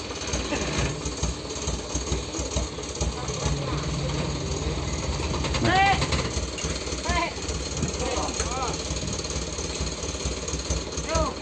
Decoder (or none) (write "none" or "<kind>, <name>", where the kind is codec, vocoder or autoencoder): none